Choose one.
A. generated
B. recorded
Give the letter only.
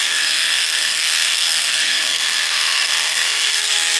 A